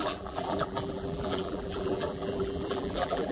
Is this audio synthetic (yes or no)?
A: yes